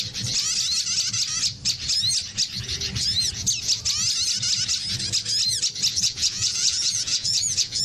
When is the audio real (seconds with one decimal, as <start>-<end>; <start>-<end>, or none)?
0.0-5.9